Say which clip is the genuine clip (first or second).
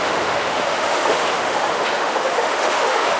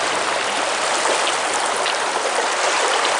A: second